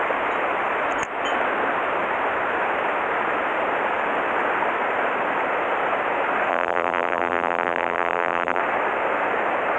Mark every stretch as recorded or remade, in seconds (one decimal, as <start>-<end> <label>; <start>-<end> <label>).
0.0-6.5 recorded; 6.5-8.6 remade; 8.6-9.8 recorded